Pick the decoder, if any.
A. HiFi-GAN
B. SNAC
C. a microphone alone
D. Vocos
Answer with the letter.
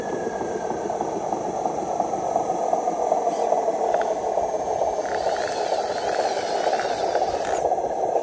C